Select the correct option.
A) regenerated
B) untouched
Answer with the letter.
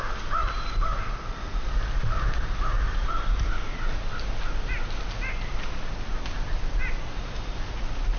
B